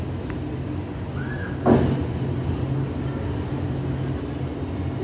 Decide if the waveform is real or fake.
real